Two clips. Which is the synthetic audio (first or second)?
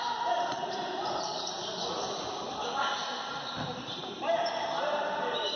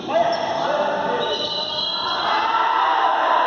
first